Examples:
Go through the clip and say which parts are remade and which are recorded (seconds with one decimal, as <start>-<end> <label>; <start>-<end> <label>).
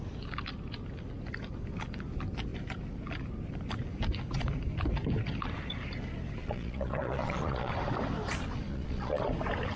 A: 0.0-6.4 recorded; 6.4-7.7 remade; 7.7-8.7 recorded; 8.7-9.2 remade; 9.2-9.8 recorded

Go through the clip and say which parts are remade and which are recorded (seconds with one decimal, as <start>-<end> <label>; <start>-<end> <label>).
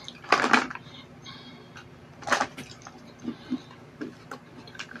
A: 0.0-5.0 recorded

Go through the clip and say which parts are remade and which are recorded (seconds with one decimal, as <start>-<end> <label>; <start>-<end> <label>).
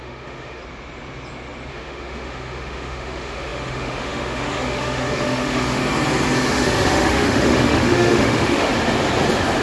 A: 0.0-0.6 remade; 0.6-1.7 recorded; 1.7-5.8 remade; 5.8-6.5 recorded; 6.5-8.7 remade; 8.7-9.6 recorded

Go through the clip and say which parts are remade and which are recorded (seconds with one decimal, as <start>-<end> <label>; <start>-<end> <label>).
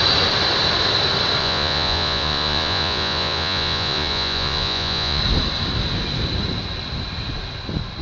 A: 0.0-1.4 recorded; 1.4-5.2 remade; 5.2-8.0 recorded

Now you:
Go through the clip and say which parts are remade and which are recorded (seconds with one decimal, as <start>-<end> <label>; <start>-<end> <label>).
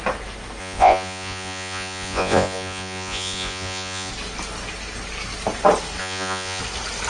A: 0.0-0.6 recorded; 0.6-4.1 remade; 4.1-6.0 recorded; 6.0-6.6 remade; 6.6-7.1 recorded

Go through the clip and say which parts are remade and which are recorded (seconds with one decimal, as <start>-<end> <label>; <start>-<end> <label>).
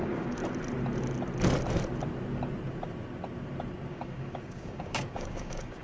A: 0.0-0.4 remade; 0.4-3.9 recorded; 3.9-5.8 remade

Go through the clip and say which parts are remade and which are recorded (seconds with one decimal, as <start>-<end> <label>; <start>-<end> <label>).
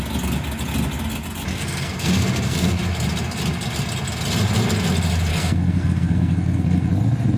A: 0.0-1.5 recorded; 1.5-2.8 remade; 2.8-5.3 recorded; 5.3-6.9 remade; 6.9-7.4 recorded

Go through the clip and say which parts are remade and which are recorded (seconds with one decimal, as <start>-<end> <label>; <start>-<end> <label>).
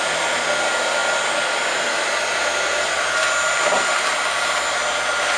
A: 0.0-5.4 recorded